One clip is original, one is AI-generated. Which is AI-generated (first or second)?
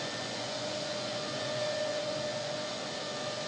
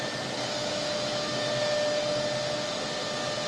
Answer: first